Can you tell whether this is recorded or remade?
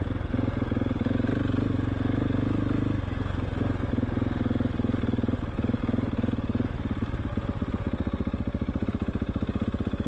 recorded